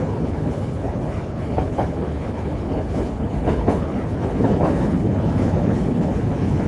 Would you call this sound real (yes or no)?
no